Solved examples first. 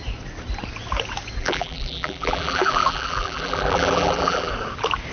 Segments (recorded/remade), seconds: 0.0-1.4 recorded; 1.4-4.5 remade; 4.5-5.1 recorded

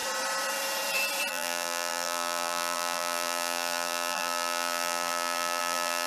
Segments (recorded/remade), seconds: 0.0-1.3 recorded; 1.3-6.1 remade

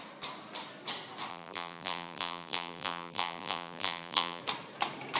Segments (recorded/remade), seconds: 0.0-1.3 recorded; 1.3-4.4 remade; 4.4-5.2 recorded

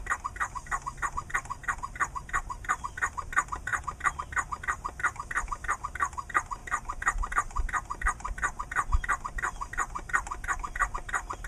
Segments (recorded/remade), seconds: 0.0-1.6 recorded; 1.6-2.8 remade; 2.8-6.6 recorded; 6.6-7.3 remade; 7.3-11.5 recorded

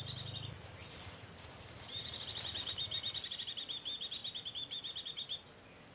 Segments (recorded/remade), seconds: 0.0-5.9 recorded

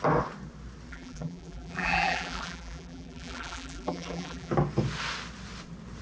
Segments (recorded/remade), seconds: 0.0-0.9 recorded; 0.9-4.5 remade; 4.5-6.0 recorded

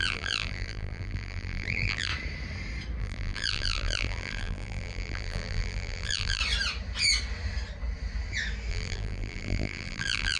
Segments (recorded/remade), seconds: 0.0-2.1 remade; 2.1-3.0 recorded; 3.0-6.4 remade; 6.4-8.7 recorded; 8.7-10.4 remade